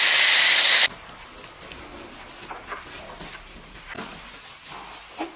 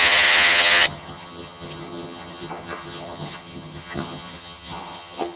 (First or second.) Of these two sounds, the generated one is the second